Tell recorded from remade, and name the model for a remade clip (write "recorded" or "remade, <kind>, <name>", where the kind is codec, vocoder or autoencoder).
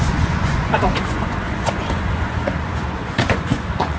remade, vocoder, Vocos